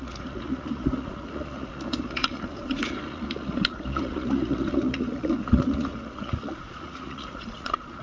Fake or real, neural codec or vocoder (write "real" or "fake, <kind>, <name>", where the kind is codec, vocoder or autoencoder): fake, vocoder, Vocos